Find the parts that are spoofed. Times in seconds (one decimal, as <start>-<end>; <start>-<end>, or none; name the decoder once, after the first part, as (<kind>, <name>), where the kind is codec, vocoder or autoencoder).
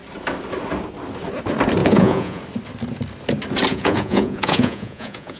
1.8-2.4 (vocoder, Vocos); 3.7-5.4